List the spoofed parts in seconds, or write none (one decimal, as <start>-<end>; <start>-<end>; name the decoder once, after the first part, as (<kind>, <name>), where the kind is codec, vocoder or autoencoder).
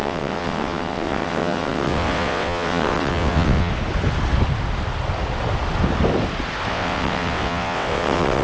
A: 0.0-3.7 (vocoder, WaveNeXt); 6.7-8.4